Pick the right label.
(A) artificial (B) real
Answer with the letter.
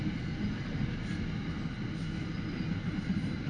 B